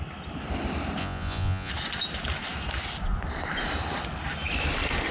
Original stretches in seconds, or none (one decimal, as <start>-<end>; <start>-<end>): 0.0-1.0; 1.7-5.1